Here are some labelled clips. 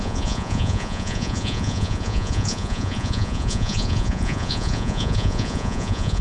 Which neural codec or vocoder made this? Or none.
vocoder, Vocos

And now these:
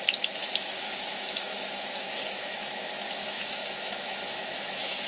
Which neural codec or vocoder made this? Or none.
autoencoder, DAC-VAE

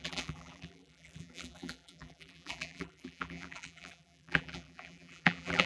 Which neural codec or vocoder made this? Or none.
vocoder, BigVGAN v2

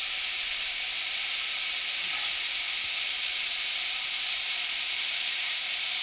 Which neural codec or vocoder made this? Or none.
none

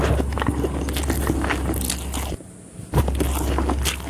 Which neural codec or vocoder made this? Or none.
none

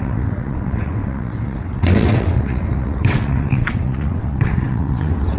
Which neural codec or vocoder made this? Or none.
vocoder, WaveNeXt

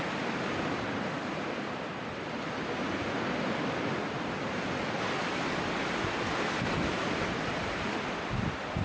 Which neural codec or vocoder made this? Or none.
vocoder, BigVGAN v2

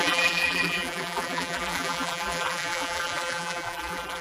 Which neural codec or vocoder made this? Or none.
vocoder, BigVGAN v2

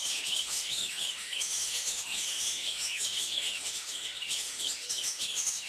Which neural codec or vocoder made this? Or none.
autoencoder, DAC-VAE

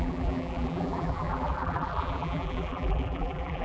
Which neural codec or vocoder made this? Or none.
vocoder, BigVGAN v2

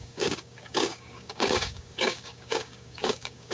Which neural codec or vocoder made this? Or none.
codec, DAC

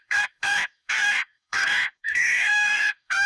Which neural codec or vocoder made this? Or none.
codec, DAC